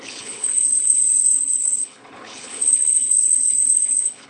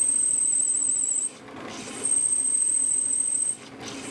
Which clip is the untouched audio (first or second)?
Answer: second